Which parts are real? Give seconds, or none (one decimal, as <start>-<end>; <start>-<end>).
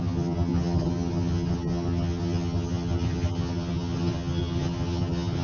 none